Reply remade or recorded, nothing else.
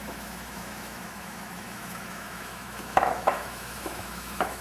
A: remade